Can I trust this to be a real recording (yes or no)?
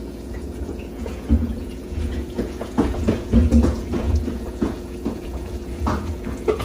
no